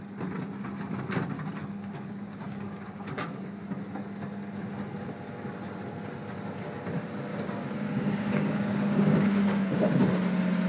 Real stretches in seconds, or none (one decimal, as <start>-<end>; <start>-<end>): 0.0-1.6; 3.6-7.3; 10.0-10.7